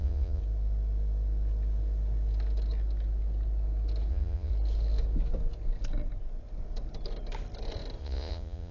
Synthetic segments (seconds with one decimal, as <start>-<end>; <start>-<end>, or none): 0.0-0.4; 4.1-4.5; 8.0-8.7